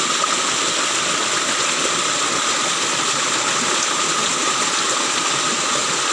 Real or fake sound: real